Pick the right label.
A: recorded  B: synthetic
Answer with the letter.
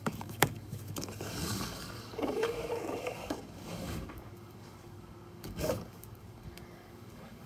B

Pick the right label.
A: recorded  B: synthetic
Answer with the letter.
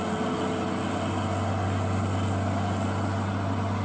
A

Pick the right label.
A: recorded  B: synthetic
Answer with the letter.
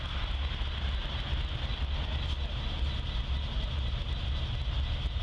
A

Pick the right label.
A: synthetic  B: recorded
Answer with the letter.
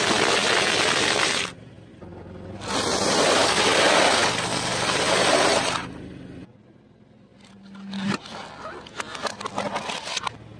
B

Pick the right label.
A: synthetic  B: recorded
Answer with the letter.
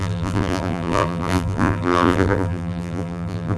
A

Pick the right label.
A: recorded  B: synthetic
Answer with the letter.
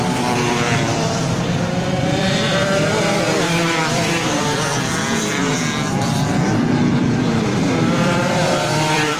B